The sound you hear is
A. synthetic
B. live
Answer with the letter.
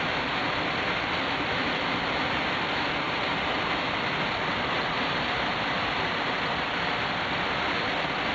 B